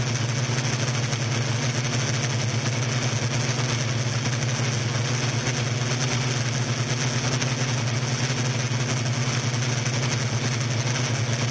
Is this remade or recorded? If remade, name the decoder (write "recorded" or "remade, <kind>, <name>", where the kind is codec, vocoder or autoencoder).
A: recorded